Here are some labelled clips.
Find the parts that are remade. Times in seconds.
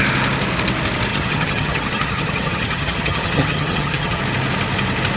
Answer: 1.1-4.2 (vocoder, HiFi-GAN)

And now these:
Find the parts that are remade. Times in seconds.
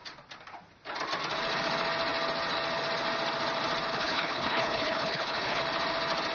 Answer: 3.9-5.6 (codec, HILCodec)